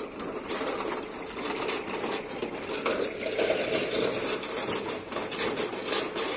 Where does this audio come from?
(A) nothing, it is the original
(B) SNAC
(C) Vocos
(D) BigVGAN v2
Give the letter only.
A